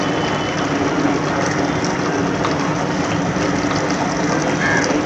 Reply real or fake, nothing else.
real